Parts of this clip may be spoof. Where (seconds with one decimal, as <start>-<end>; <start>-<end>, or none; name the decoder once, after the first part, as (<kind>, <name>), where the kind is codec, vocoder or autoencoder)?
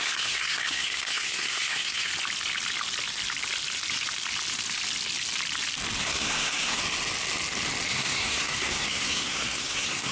0.0-2.1 (codec, SNAC); 6.0-6.8; 7.9-10.1